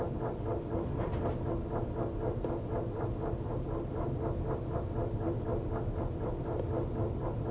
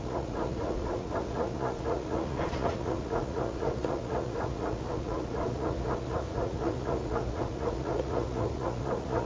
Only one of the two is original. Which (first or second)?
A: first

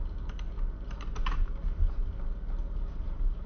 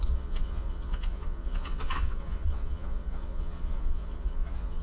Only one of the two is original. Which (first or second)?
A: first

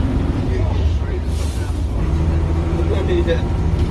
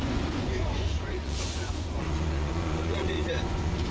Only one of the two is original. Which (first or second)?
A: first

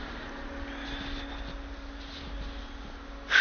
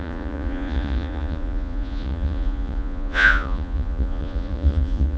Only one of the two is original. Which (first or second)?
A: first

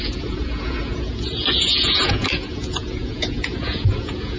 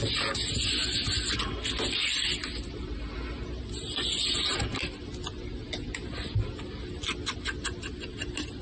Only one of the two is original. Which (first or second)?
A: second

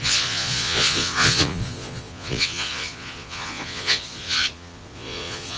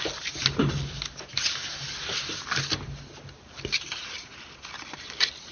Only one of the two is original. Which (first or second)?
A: second